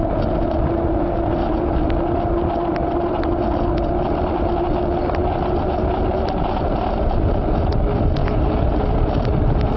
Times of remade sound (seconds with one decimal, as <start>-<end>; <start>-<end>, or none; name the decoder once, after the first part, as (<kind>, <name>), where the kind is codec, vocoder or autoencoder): none